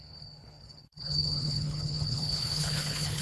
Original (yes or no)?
no